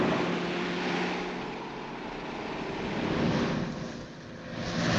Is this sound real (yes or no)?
yes